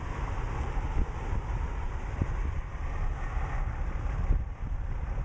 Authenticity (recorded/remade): recorded